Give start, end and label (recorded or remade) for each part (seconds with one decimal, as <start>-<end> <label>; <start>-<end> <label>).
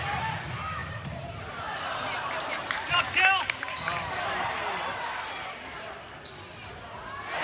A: 0.0-0.8 recorded; 0.8-4.6 remade; 4.6-7.4 recorded